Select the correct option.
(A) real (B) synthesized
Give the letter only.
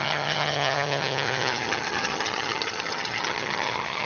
B